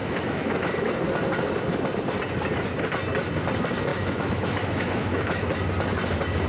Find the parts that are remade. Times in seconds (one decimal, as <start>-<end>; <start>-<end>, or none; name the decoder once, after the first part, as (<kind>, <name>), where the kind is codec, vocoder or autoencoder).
0.0-0.9 (autoencoder, DAC-VAE); 3.9-5.5